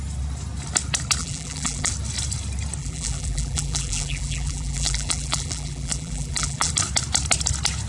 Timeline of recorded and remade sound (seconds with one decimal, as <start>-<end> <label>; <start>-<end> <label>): 0.0-1.2 recorded; 1.2-1.9 remade; 1.9-2.8 recorded; 2.8-6.7 remade; 6.7-7.9 recorded